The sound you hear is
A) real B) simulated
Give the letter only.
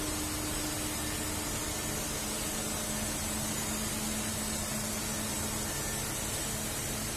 A